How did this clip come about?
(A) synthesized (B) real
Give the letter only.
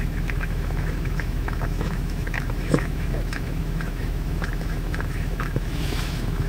A